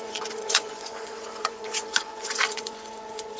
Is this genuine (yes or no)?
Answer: no